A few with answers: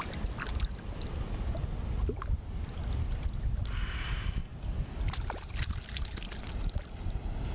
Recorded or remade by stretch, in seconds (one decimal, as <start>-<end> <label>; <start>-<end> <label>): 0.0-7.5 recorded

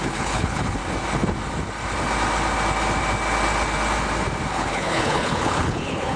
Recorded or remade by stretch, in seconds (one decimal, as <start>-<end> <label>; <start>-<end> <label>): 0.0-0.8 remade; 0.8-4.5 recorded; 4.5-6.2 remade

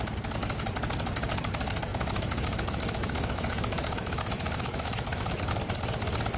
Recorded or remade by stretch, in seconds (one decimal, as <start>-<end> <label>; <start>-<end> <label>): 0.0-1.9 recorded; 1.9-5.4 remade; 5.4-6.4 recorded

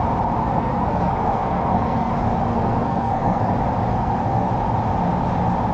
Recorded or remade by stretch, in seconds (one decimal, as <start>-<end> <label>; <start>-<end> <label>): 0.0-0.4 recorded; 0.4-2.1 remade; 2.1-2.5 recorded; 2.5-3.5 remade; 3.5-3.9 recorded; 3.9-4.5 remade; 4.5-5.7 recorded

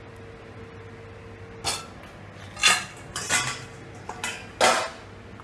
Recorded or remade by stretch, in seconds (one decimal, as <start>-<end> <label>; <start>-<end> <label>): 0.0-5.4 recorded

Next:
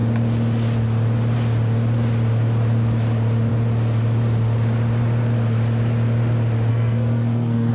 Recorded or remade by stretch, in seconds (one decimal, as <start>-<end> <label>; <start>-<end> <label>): 0.0-6.7 recorded; 6.7-7.7 remade

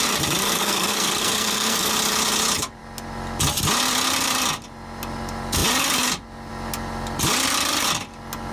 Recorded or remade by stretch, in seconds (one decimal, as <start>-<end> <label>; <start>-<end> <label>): 0.0-0.4 recorded; 0.4-1.9 remade; 1.9-8.5 recorded